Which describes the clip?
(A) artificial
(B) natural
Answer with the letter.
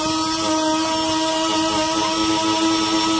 B